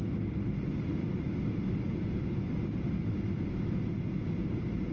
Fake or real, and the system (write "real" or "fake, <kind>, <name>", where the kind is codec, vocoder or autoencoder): real